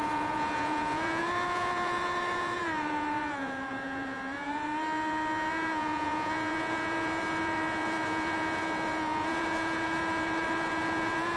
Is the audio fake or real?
fake